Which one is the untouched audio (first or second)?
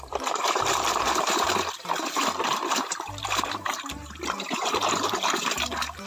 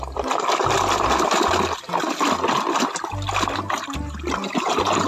second